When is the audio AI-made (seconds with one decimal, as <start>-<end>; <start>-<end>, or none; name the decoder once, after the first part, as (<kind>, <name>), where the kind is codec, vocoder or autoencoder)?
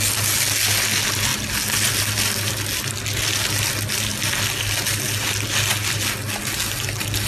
none